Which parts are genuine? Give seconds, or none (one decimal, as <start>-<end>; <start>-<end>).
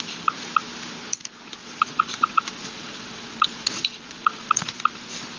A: 0.0-1.6; 4.8-5.4